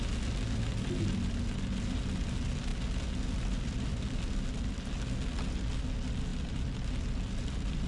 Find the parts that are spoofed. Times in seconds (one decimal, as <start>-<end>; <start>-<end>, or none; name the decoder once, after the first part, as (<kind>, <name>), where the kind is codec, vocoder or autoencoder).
none